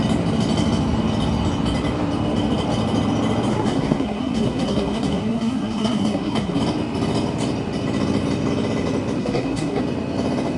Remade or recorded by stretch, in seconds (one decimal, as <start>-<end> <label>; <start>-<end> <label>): 0.0-3.5 recorded; 3.5-6.6 remade; 6.6-9.2 recorded; 9.2-9.8 remade; 9.8-10.6 recorded